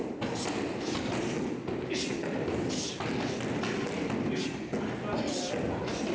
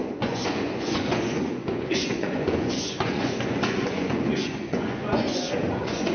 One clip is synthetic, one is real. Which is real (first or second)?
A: first